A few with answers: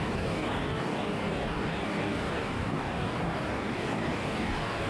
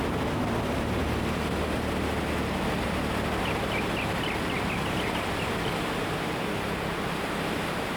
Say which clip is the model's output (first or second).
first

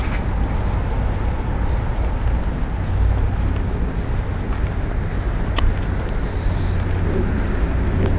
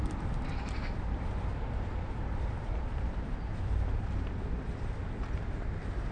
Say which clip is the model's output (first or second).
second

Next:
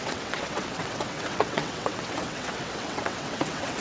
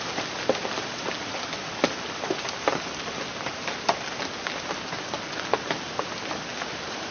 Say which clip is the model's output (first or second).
first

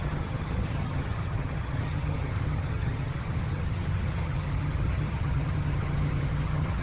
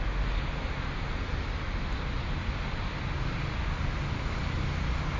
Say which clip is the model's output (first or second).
first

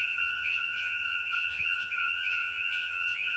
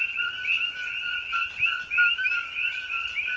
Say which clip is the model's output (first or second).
first